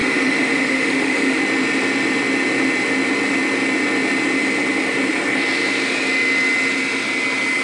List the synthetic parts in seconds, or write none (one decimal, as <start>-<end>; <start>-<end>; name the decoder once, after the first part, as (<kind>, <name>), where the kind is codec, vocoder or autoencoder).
0.0-1.4 (autoencoder, DAC-VAE)